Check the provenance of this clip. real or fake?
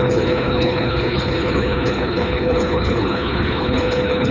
fake